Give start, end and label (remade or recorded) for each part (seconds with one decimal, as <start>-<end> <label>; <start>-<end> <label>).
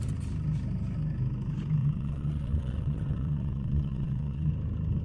0.0-1.8 recorded; 1.8-4.5 remade; 4.5-5.0 recorded